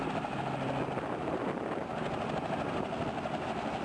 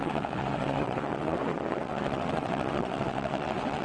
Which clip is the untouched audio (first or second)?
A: first